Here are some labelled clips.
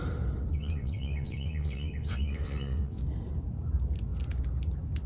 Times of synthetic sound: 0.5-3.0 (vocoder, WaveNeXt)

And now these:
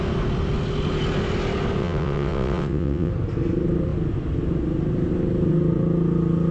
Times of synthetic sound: 1.8-3.1 (vocoder, WaveNeXt)

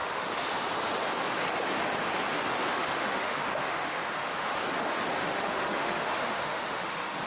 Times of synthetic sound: 0.0-0.5 (autoencoder, DAC-VAE); 2.7-4.6; 5.2-7.3

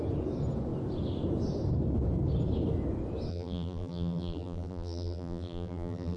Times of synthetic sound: 3.3-6.2 (vocoder, BigVGAN v2)